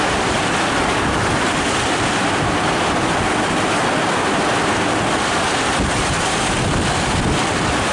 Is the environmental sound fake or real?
real